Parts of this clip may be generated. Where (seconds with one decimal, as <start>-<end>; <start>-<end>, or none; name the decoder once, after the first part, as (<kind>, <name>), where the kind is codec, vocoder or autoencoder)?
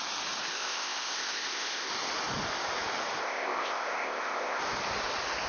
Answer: 0.5-1.9 (codec, ZipCodec); 3.2-4.6